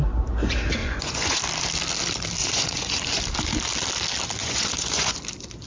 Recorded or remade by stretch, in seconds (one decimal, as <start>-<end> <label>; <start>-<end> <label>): 0.0-0.8 recorded; 0.8-1.4 remade; 1.4-2.4 recorded; 2.4-3.2 remade; 3.2-4.4 recorded; 4.4-5.2 remade; 5.2-5.7 recorded